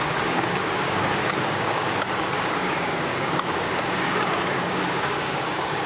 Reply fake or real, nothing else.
fake